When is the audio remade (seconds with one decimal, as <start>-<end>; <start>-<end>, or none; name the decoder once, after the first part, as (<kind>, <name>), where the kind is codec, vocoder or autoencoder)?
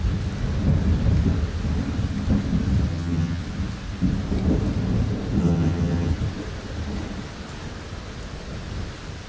2.9-3.4 (vocoder, HiFi-GAN); 5.4-6.1